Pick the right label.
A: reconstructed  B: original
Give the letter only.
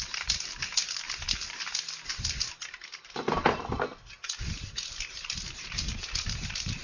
B